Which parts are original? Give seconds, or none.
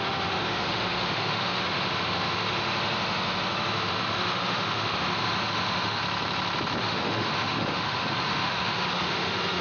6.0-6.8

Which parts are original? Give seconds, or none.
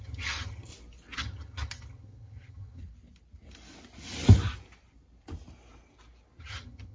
0.7-1.2; 2.8-6.4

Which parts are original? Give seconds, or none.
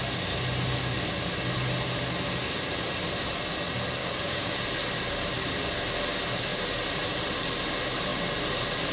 0.0-4.0; 4.5-8.9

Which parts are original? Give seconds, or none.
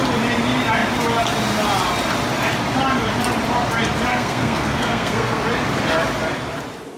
0.0-4.1; 5.4-7.0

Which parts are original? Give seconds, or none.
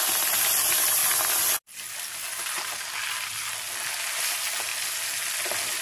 0.0-5.8